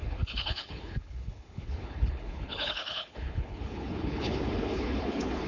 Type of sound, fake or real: fake